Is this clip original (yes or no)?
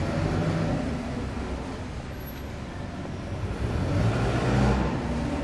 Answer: yes